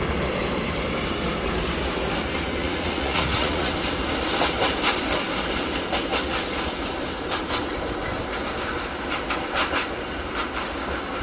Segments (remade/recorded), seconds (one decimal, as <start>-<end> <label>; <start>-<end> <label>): 0.0-2.6 recorded; 2.6-3.7 remade; 3.7-11.2 recorded

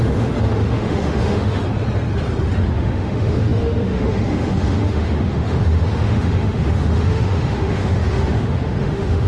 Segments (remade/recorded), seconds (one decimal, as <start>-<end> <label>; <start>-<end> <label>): 0.0-1.6 remade; 1.6-2.7 recorded; 2.7-9.3 remade

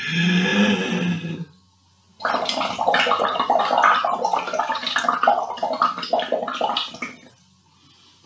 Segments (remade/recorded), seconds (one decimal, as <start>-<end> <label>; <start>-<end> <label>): 0.0-8.3 recorded

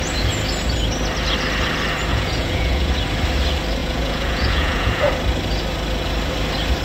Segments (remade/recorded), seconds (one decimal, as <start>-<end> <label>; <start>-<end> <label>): 0.0-2.1 recorded; 2.1-2.9 remade; 2.9-3.8 recorded; 3.8-5.1 remade; 5.1-6.8 recorded

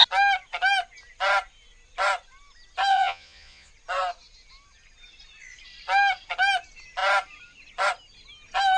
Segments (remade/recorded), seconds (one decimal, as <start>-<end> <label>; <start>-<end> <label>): 0.0-2.9 recorded; 2.9-3.7 remade; 3.7-8.8 recorded

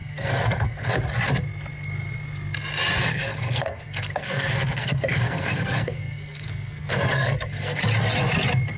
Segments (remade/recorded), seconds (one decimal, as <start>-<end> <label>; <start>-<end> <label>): 0.0-0.9 remade; 0.9-3.1 recorded; 3.1-7.8 remade; 7.8-8.8 recorded

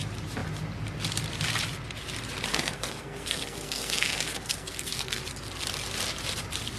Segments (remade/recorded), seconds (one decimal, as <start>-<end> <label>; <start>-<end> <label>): 0.0-2.5 recorded; 2.5-5.2 remade; 5.2-6.8 recorded